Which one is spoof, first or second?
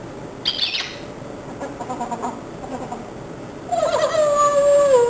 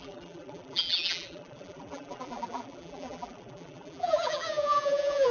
second